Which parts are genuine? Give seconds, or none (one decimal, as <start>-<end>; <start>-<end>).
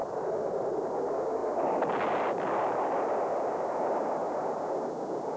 0.8-5.4